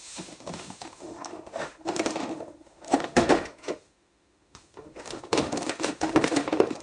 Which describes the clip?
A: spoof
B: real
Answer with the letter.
A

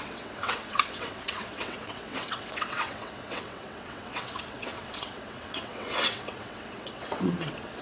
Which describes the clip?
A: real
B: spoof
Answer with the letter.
B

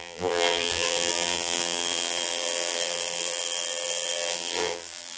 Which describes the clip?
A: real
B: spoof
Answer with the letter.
B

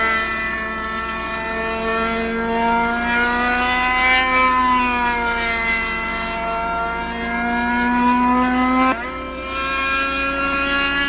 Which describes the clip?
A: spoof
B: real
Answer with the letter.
B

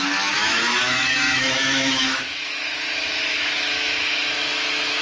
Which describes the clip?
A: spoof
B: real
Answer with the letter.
A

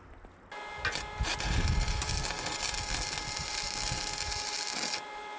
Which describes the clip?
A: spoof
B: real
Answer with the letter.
B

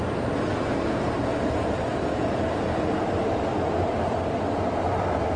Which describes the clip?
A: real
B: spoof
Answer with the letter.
A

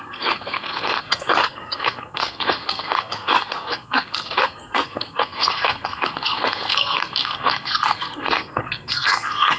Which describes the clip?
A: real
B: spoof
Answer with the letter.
B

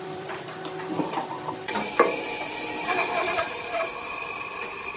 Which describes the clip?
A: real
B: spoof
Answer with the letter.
B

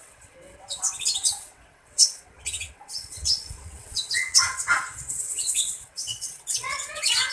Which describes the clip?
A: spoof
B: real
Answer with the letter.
A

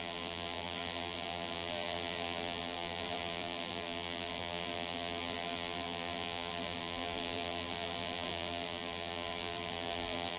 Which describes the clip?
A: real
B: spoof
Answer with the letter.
B